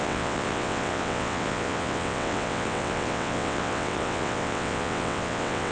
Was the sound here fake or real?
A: fake